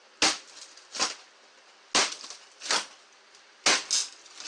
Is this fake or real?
real